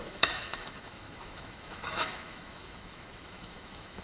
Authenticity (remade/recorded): remade